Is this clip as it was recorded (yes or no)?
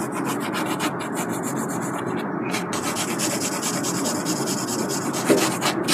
yes